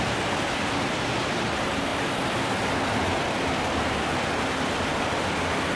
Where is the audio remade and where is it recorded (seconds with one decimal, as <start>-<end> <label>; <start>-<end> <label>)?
0.0-5.8 recorded